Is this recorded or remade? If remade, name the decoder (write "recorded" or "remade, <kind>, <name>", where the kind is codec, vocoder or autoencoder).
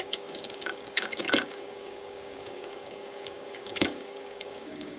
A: remade, codec, DAC